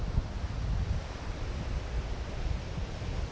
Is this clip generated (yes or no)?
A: yes